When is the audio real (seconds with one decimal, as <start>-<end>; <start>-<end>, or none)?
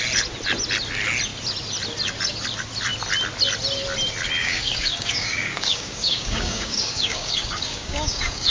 0.0-4.4